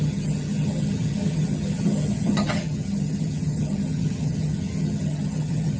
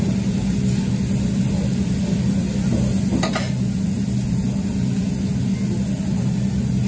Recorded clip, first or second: second